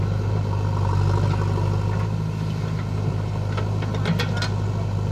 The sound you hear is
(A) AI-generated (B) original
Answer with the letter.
B